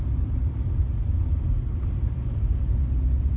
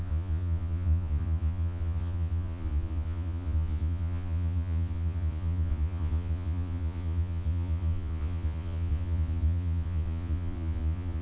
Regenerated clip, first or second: second